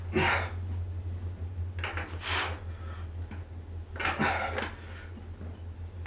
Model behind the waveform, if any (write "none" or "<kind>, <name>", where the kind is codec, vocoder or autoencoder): none